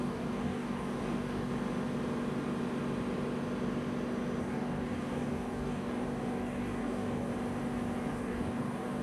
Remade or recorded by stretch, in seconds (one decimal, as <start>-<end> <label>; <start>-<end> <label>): 0.0-1.5 remade; 1.5-4.4 recorded; 4.4-7.3 remade; 7.3-8.1 recorded; 8.1-9.0 remade